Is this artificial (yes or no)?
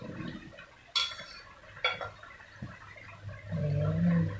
no